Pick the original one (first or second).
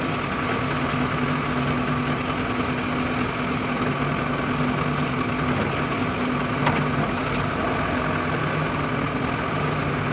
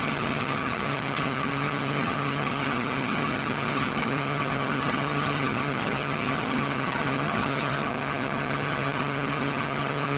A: first